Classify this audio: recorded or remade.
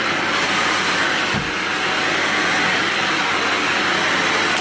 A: recorded